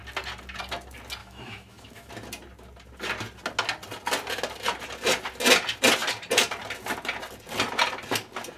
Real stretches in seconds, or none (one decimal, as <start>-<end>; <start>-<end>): 0.0-1.2; 2.1-8.6